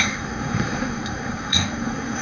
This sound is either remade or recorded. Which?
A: remade